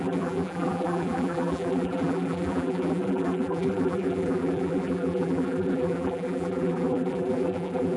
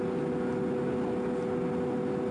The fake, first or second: first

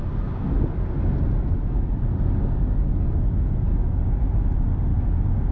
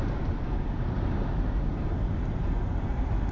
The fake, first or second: second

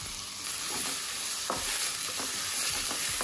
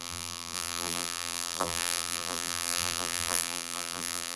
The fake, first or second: second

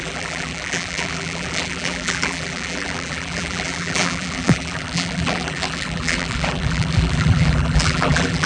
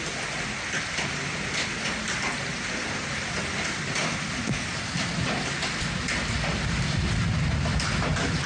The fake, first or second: first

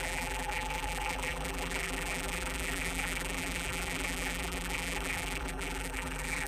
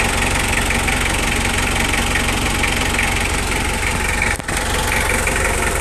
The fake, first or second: first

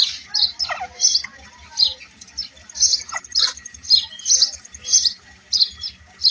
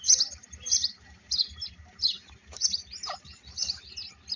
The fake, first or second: second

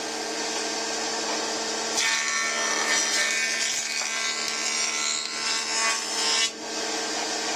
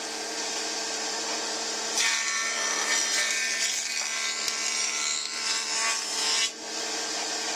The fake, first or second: second